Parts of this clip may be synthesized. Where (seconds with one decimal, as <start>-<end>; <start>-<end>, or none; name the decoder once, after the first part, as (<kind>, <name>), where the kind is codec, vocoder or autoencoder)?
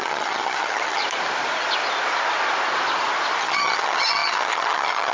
0.0-1.0 (vocoder, HiFi-GAN); 3.4-5.1